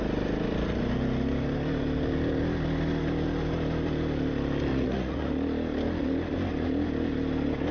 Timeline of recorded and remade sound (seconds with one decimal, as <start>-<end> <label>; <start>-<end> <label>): 0.0-4.7 recorded; 4.7-5.3 remade; 5.3-7.7 recorded